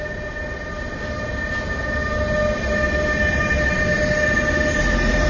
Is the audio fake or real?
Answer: real